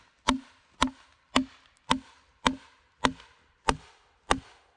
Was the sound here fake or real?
real